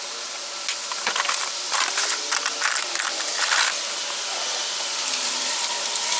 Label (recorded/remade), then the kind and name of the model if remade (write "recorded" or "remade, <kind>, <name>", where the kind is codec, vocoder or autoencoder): remade, vocoder, BigVGAN v2